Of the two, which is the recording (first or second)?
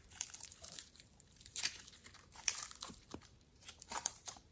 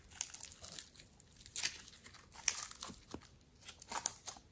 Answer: second